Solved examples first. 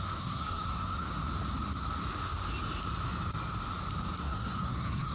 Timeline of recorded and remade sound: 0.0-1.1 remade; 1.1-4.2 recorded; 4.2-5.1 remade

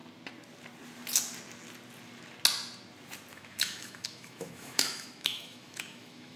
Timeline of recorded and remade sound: 0.0-3.3 recorded; 3.3-6.4 remade

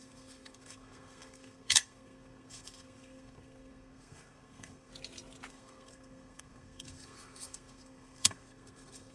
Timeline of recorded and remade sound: 0.0-4.9 remade; 4.9-5.5 recorded; 5.5-9.1 remade

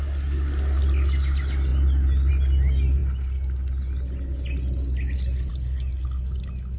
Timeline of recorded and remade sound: 0.0-6.8 recorded

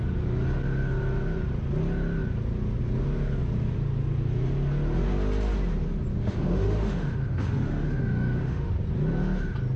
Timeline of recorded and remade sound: 0.0-6.1 recorded; 6.1-8.7 remade; 8.7-9.8 recorded

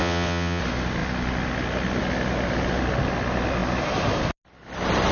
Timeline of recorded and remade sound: 0.0-0.6 remade; 0.6-5.1 recorded

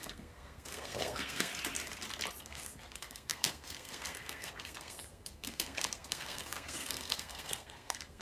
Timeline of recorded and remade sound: 0.0-1.5 remade; 1.5-2.4 recorded; 2.4-8.2 remade